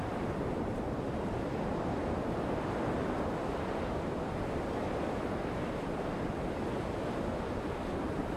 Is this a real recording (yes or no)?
no